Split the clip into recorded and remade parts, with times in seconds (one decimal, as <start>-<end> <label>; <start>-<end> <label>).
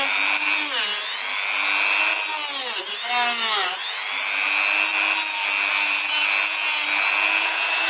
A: 0.0-7.9 recorded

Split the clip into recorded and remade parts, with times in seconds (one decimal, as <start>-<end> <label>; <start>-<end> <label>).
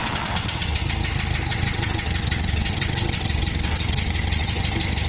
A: 0.0-0.8 remade; 0.8-1.5 recorded; 1.5-4.6 remade; 4.6-5.1 recorded